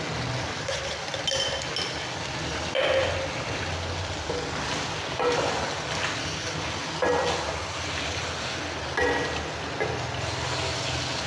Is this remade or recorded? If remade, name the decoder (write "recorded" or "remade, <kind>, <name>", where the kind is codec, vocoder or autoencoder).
recorded